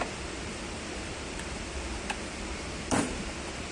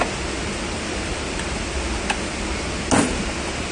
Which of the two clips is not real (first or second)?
first